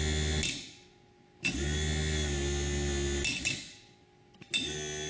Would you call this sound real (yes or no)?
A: yes